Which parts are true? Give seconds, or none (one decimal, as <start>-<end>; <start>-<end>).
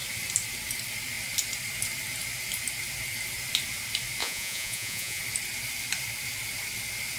0.0-4.2; 5.2-7.2